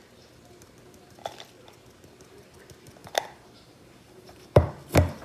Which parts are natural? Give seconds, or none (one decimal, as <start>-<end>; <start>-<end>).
0.0-3.0; 4.7-5.2